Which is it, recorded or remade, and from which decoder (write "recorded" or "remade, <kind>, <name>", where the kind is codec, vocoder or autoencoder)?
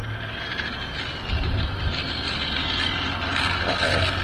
recorded